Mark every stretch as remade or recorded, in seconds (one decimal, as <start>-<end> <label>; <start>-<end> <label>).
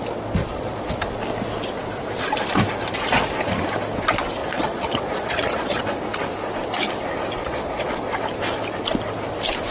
0.0-0.4 recorded; 0.4-1.0 remade; 1.0-4.4 recorded; 4.4-5.8 remade; 5.8-7.4 recorded; 7.4-8.1 remade; 8.1-9.7 recorded